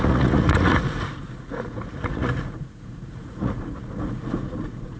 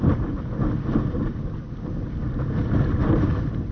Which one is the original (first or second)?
second